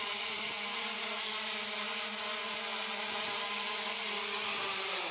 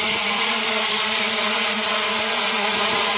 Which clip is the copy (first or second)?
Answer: second